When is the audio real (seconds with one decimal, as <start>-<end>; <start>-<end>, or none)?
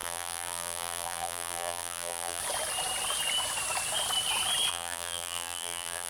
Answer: 2.4-4.7